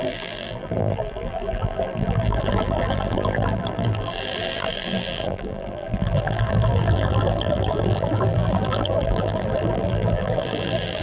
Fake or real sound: fake